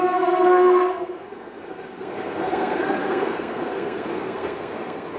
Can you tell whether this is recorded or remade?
remade